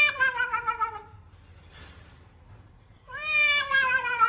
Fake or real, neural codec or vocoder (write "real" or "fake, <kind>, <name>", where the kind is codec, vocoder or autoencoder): fake, vocoder, BigVGAN v2